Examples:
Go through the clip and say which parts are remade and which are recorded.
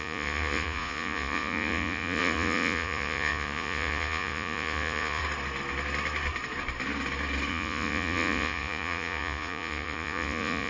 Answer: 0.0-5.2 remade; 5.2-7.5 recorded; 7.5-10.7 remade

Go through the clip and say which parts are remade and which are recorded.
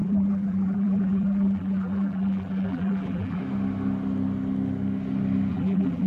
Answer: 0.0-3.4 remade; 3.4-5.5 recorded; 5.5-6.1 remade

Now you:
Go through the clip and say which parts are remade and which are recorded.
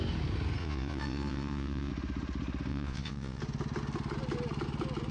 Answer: 0.0-0.6 recorded; 0.6-1.9 remade; 1.9-2.7 recorded; 2.7-3.4 remade; 3.4-5.1 recorded